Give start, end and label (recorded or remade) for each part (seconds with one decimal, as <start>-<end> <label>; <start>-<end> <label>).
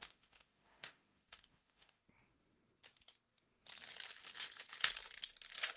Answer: 0.0-2.0 remade; 2.0-5.8 recorded